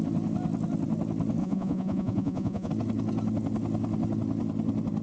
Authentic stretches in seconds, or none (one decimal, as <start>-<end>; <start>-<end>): 0.0-1.4; 2.7-5.0